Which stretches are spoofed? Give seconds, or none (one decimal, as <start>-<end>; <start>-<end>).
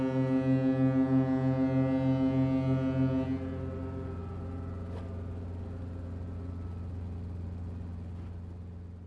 none